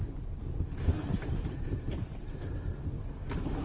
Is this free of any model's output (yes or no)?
yes